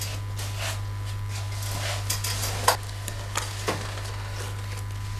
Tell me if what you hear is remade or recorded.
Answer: recorded